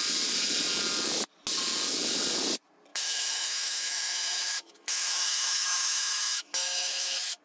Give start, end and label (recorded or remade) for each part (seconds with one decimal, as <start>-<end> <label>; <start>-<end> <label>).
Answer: 0.0-2.9 recorded; 2.9-7.4 remade